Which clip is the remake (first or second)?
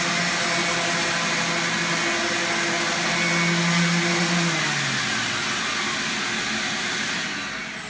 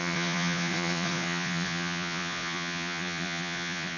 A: second